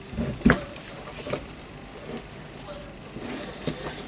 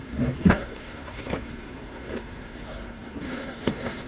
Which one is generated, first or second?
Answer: second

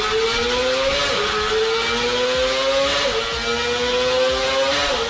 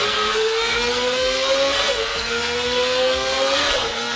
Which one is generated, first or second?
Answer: second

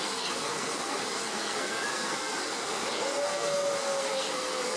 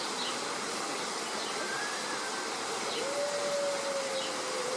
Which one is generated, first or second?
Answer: first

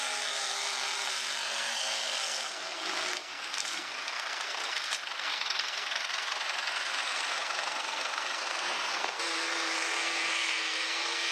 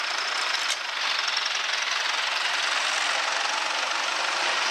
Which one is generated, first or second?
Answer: first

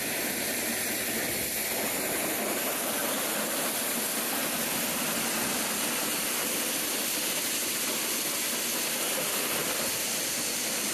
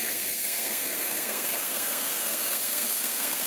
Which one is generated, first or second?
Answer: second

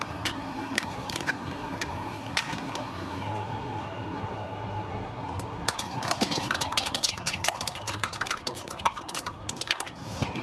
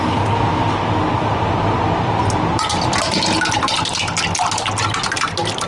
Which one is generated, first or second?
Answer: first